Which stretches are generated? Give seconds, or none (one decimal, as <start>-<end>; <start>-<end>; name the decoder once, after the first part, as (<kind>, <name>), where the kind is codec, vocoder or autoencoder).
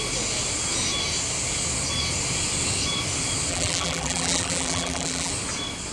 3.5-5.3 (vocoder, BigVGAN v2)